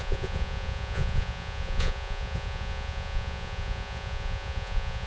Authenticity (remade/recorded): remade